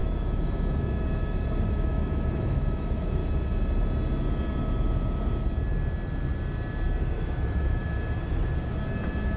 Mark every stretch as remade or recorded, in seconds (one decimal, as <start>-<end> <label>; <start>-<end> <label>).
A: 0.0-3.2 remade; 3.2-7.0 recorded; 7.0-7.8 remade; 7.8-9.4 recorded